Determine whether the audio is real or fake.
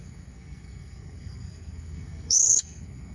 fake